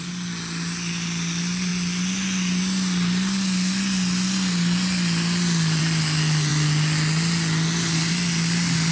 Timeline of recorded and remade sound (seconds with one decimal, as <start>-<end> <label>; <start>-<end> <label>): 0.0-8.9 recorded